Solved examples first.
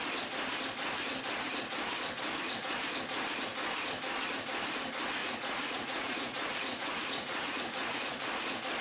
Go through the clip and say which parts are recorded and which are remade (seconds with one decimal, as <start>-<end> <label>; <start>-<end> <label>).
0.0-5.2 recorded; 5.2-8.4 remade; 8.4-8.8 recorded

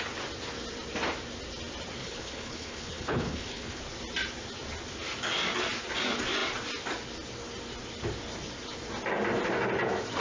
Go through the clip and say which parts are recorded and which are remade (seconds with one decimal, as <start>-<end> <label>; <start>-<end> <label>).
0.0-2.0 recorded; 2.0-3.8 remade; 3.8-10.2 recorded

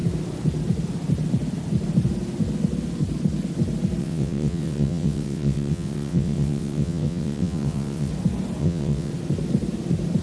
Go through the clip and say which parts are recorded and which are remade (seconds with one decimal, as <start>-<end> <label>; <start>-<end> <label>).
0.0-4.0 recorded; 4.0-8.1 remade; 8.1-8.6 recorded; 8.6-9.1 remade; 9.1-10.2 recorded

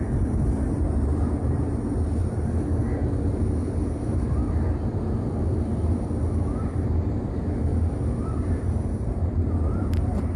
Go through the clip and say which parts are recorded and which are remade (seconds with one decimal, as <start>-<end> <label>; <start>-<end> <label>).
0.0-2.2 remade; 2.2-3.3 recorded; 3.3-4.4 remade; 4.4-6.7 recorded; 6.7-7.7 remade; 7.7-8.2 recorded; 8.2-10.4 remade

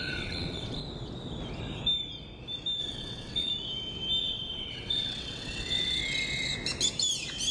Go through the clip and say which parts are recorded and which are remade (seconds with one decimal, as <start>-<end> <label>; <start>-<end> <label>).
0.0-0.8 remade; 0.8-2.8 recorded; 2.8-3.5 remade; 3.5-4.2 recorded; 4.2-6.0 remade; 6.0-7.5 recorded

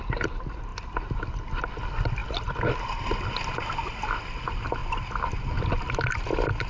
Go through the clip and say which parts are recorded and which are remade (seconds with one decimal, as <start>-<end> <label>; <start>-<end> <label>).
0.0-6.7 recorded

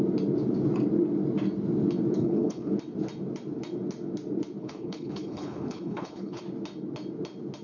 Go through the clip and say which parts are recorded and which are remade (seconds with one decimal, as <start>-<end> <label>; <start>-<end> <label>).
0.0-2.2 recorded; 2.2-2.7 remade; 2.7-4.6 recorded; 4.6-6.4 remade; 6.4-7.6 recorded